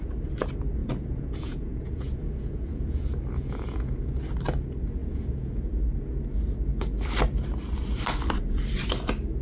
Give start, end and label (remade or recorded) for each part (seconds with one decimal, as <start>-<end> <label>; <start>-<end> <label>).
0.0-0.8 recorded; 0.8-4.2 remade; 4.2-5.0 recorded; 5.0-5.5 remade; 5.5-9.4 recorded